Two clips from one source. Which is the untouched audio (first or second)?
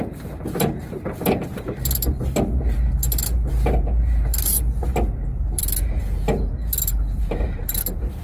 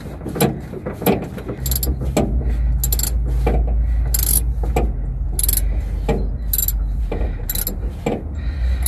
second